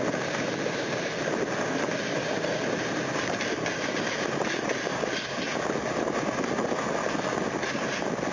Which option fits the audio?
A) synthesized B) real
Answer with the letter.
B